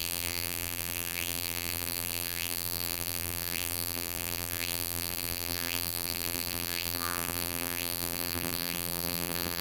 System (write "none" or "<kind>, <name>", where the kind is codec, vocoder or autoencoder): vocoder, BigVGAN v2